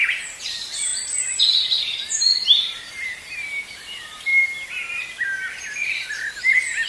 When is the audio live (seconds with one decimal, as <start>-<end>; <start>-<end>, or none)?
0.9-1.5; 4.3-6.4